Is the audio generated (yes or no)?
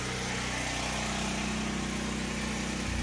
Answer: no